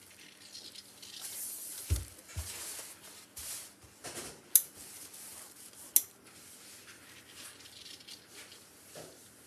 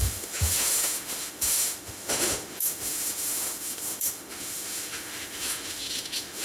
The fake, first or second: second